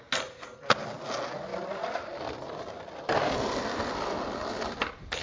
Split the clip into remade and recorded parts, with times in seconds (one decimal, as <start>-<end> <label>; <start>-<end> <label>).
0.0-5.2 recorded